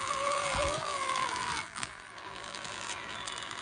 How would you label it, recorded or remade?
remade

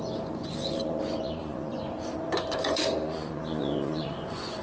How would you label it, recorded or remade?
remade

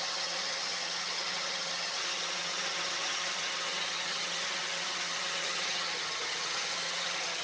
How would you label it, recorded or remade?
remade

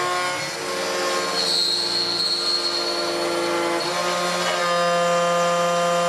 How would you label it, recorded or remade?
recorded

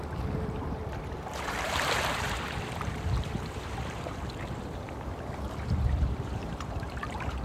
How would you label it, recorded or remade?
remade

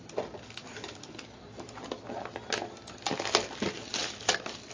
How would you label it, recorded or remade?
recorded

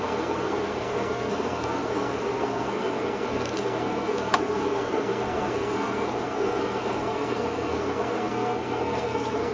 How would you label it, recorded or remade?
remade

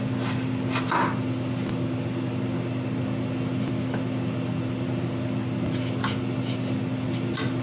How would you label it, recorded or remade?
recorded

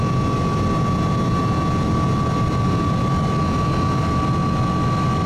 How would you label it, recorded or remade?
recorded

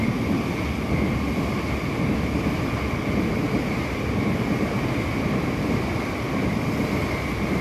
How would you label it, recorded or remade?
recorded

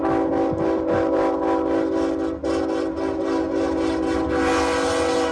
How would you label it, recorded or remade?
recorded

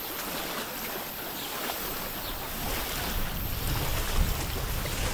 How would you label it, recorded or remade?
recorded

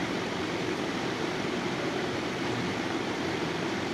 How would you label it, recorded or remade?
remade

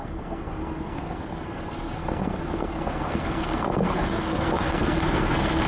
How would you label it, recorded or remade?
remade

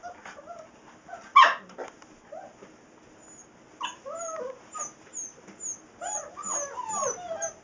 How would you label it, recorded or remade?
recorded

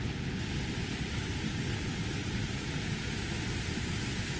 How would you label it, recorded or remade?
recorded